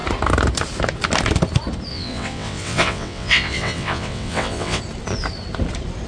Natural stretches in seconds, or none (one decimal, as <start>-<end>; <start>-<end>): 0.0-1.9; 4.8-6.1